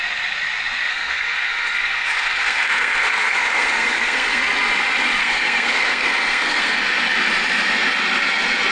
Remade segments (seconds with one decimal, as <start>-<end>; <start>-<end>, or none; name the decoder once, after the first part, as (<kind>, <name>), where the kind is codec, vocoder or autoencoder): 0.9-4.4 (codec, SNAC); 5.2-6.8